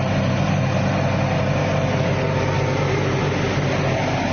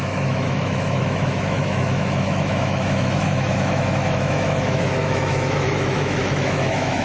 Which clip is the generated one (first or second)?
second